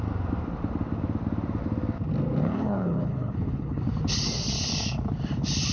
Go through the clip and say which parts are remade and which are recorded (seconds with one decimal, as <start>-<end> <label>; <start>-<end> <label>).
0.0-2.4 recorded; 2.4-3.8 remade; 3.8-5.7 recorded